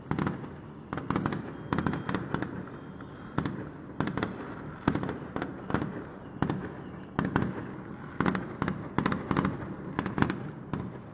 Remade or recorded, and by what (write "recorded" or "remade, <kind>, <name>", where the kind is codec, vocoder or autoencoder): recorded